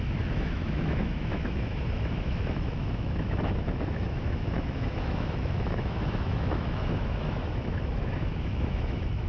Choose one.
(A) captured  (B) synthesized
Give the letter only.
B